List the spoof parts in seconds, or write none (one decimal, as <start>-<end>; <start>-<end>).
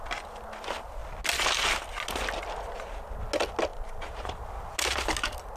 3.7-4.4